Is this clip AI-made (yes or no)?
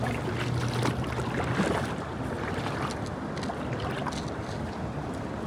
no